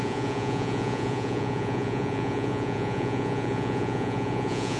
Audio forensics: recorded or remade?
remade